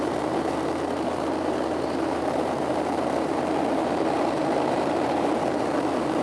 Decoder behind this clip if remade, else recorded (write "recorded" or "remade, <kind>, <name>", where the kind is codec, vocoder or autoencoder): remade, vocoder, BigVGAN v2